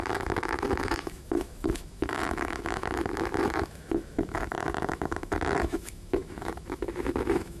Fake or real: fake